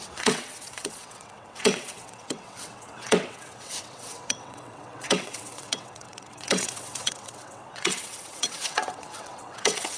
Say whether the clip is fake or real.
fake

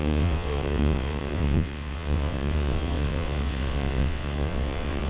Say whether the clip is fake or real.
fake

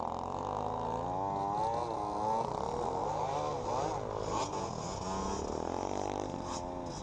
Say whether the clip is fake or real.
real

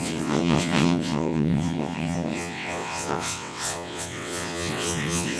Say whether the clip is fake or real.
fake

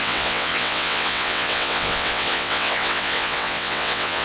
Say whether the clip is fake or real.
fake